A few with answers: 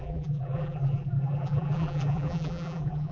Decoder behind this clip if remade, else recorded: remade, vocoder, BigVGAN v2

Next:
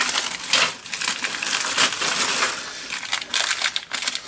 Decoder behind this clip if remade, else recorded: recorded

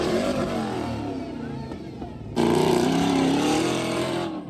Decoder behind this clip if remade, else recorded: remade, vocoder, BigVGAN v2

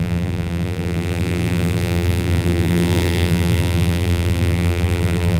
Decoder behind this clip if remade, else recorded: remade, vocoder, BigVGAN v2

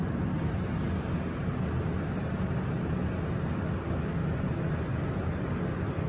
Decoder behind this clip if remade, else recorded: recorded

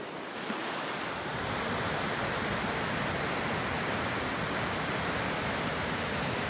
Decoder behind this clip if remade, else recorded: remade, vocoder, BigVGAN v2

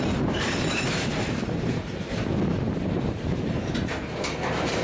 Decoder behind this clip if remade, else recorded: remade, vocoder, BigVGAN v2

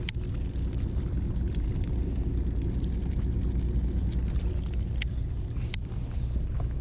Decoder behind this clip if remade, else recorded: recorded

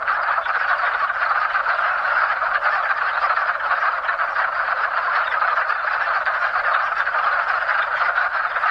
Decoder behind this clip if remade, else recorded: remade, vocoder, BigVGAN v2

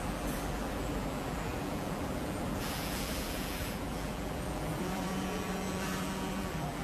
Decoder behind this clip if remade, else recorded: remade, vocoder, BigVGAN v2